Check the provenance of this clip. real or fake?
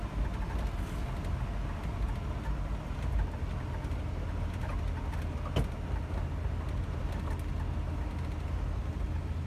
real